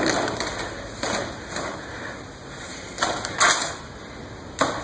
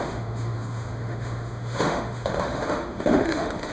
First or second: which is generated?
second